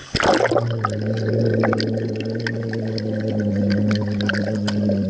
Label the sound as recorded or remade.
recorded